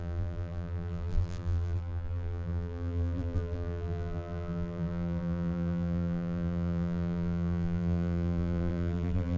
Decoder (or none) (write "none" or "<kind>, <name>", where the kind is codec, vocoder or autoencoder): vocoder, BigVGAN v2